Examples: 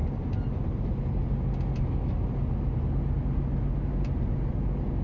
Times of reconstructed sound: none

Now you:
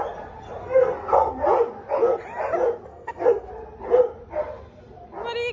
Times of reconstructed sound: 0.6-1.3 (codec, SNAC); 2.9-3.5

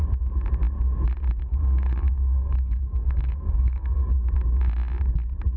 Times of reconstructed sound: 1.4-4.1 (codec, SNAC)

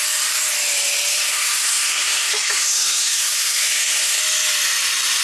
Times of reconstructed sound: 1.1-4.2 (codec, SNAC)

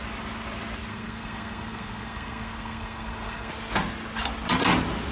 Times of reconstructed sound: 0.9-3.5 (codec, SNAC)

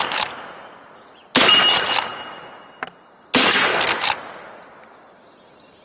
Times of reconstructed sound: 3.4-4.0 (codec, SNAC)

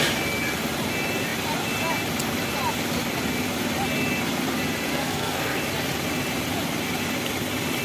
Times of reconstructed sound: 4.9-5.6 (codec, SNAC)